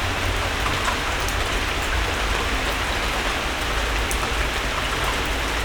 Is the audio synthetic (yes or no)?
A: no